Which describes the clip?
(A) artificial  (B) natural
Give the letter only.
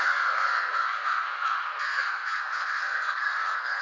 A